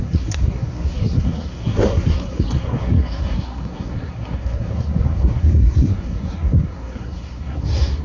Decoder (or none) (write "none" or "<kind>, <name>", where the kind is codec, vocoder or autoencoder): codec, SNAC